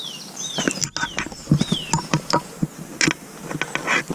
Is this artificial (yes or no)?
no